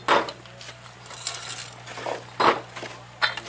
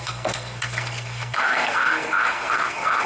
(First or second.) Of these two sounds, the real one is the first